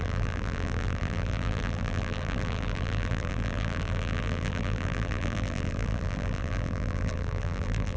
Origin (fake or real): fake